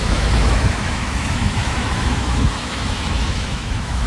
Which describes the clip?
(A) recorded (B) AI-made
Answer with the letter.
B